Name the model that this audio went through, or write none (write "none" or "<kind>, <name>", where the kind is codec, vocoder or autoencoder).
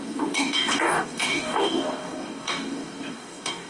codec, DAC